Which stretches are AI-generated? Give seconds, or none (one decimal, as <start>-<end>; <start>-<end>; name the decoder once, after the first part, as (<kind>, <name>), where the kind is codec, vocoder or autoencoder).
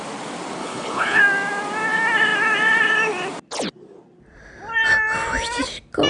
0.6-1.2 (codec, HILCodec)